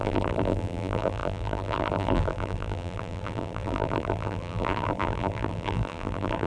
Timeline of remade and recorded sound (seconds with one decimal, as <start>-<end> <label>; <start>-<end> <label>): 0.0-6.5 remade

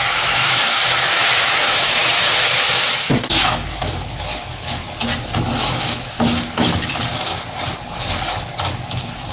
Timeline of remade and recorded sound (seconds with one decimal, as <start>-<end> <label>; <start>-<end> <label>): 0.0-4.8 remade; 4.8-5.6 recorded; 5.6-7.3 remade; 7.3-8.9 recorded; 8.9-9.3 remade

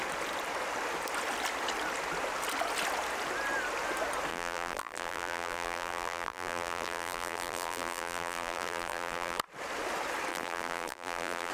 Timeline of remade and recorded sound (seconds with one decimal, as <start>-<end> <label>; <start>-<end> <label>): 0.0-4.3 recorded; 4.3-9.4 remade; 9.4-10.3 recorded; 10.3-11.5 remade

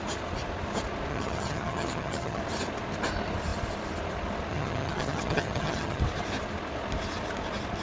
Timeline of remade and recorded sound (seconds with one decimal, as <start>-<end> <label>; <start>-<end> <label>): 0.0-1.1 recorded; 1.1-2.4 remade; 2.4-4.5 recorded; 4.5-6.0 remade; 6.0-7.8 recorded